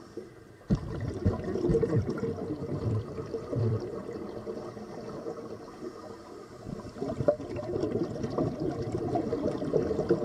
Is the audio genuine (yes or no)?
no